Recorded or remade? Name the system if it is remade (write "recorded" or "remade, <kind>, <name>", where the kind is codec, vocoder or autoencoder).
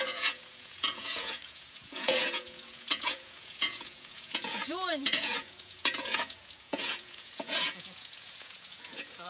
remade, vocoder, Vocos